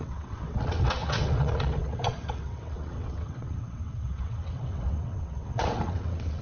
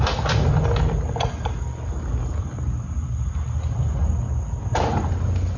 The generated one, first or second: first